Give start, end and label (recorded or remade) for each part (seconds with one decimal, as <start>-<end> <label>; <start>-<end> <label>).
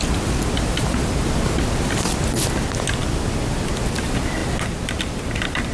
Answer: 0.0-5.7 recorded